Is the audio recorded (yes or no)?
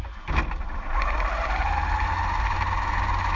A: yes